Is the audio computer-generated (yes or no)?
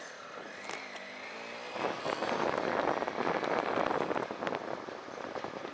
no